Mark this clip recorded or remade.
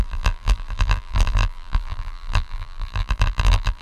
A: remade